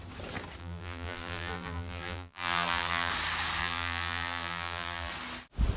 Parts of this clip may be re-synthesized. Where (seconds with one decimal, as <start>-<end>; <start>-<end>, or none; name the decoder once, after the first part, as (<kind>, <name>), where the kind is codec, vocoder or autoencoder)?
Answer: 0.6-3.1 (vocoder, BigVGAN v2); 3.6-5.1